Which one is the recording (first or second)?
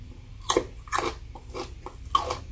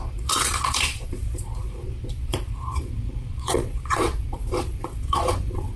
first